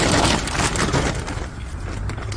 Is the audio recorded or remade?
recorded